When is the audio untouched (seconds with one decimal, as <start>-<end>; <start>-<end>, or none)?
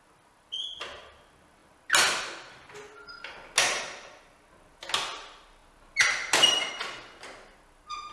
0.0-8.1